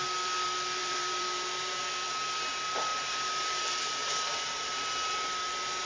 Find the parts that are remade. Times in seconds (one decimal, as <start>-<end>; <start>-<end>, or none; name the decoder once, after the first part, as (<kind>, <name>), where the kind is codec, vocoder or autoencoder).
0.8-1.8 (vocoder, BigVGAN v2); 2.9-4.7